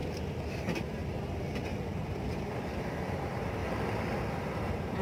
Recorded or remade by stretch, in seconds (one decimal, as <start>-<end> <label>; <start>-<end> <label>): 0.0-0.5 recorded; 0.5-1.0 remade; 1.0-2.4 recorded; 2.4-3.6 remade; 3.6-4.3 recorded; 4.3-5.0 remade